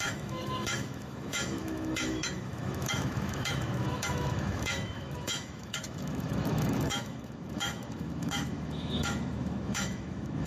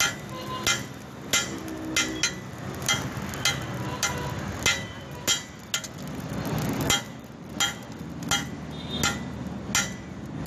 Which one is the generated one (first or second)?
first